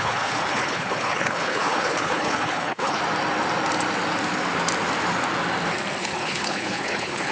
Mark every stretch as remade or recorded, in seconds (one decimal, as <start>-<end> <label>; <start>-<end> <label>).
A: 0.0-3.0 remade; 3.0-6.0 recorded; 6.0-7.3 remade